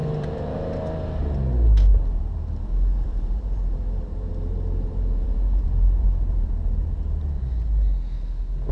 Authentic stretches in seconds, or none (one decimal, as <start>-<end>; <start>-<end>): 1.2-1.9; 6.9-8.7